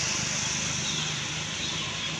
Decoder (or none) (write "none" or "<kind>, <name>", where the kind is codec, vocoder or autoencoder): none